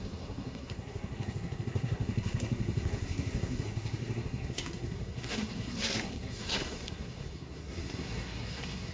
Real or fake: fake